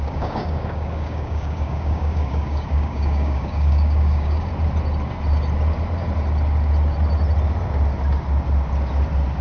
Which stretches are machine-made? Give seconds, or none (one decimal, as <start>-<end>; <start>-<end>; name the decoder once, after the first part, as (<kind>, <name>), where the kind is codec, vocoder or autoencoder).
0.0-4.5 (codec, DAC)